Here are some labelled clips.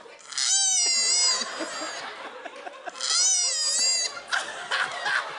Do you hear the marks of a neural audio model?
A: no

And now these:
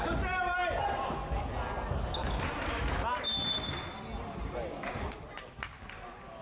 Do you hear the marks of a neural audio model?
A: no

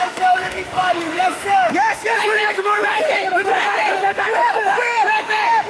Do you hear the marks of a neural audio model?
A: yes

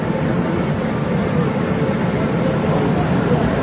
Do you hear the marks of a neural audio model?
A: no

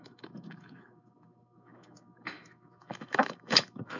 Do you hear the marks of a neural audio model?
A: yes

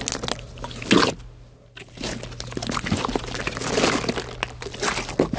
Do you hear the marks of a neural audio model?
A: no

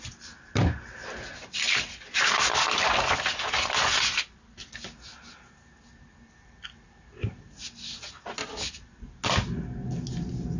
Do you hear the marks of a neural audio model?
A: no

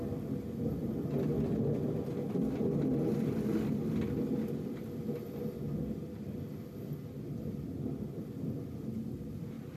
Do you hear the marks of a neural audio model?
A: no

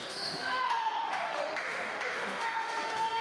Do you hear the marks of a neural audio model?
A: yes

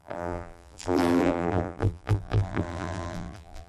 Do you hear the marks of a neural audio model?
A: yes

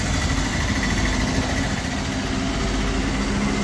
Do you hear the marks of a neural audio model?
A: no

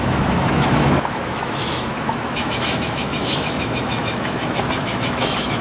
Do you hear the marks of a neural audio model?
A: yes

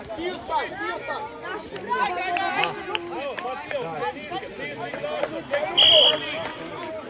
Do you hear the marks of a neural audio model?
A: no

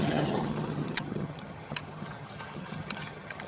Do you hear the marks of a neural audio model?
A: yes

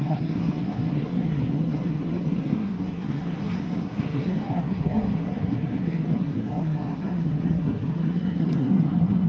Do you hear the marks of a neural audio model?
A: yes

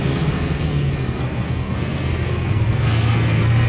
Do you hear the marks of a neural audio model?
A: yes